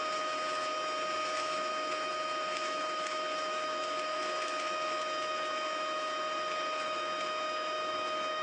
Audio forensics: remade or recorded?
remade